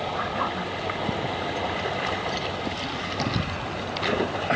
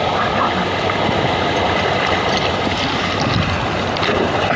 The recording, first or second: first